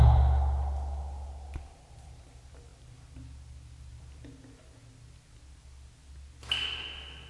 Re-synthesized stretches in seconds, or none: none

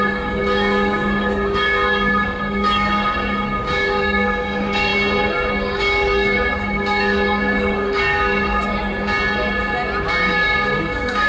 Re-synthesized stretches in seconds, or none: 0.0-4.9 (codec, DAC); 5.5-8.7; 10.2-11.3

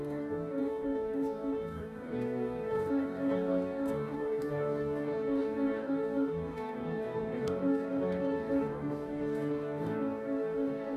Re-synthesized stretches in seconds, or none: 0.0-11.0 (codec, DAC)

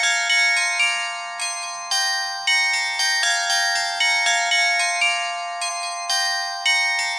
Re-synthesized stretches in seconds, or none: none

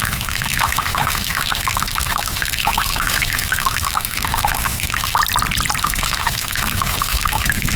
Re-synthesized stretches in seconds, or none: 0.0-5.2 (autoencoder, DAC-VAE); 5.8-7.8

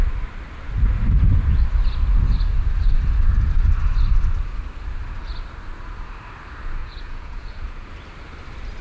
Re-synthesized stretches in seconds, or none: 6.8-7.9 (vocoder, Vocos)